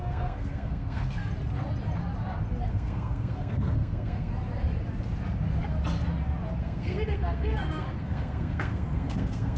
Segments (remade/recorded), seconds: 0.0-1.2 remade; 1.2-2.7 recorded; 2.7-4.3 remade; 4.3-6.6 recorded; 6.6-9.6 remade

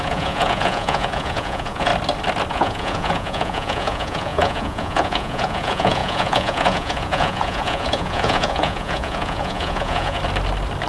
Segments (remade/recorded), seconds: 0.0-1.9 remade; 1.9-2.5 recorded; 2.5-10.2 remade; 10.2-10.9 recorded

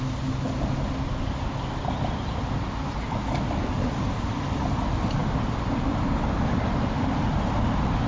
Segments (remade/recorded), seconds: 0.0-8.1 recorded

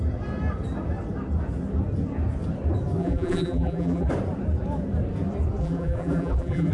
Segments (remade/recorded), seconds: 0.0-3.0 recorded; 3.0-4.1 remade; 4.1-5.6 recorded; 5.6-6.7 remade

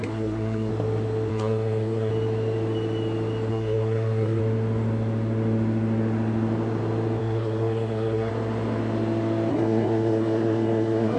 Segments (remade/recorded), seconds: 0.0-0.7 remade; 0.7-1.3 recorded; 1.3-2.1 remade; 2.1-3.5 recorded; 3.5-4.4 remade; 4.4-7.2 recorded; 7.2-8.3 remade; 8.3-9.5 recorded; 9.5-11.2 remade

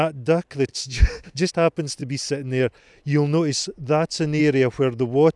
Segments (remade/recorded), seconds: 0.0-0.7 recorded; 0.7-1.5 remade; 1.5-5.4 recorded

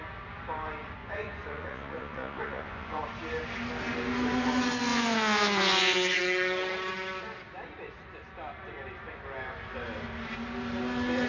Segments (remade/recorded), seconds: 0.0-1.0 recorded; 1.0-3.0 remade; 3.0-4.9 recorded; 4.9-6.2 remade; 6.2-11.3 recorded